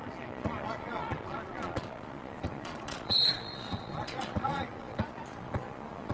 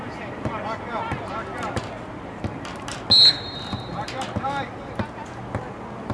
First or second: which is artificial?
first